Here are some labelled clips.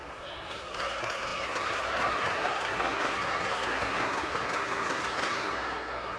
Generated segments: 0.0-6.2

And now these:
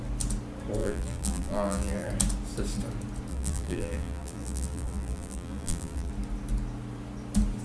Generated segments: 0.8-2.1; 3.3-6.1

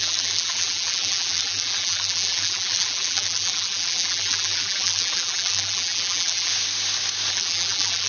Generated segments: 0.0-6.5; 7.3-8.1

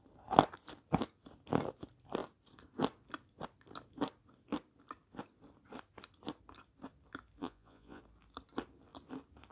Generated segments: 7.4-8.0

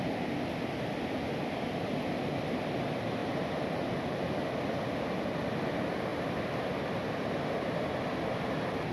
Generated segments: none